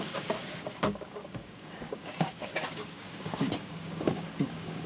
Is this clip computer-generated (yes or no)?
yes